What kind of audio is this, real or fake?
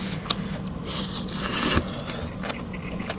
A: real